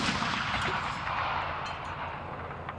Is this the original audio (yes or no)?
yes